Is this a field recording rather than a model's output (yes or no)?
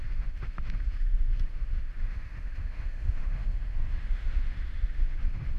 no